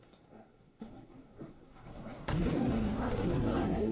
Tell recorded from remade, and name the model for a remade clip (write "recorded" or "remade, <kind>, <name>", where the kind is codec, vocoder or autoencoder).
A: remade, codec, SNAC